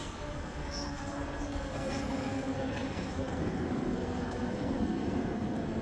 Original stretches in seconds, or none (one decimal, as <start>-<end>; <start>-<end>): none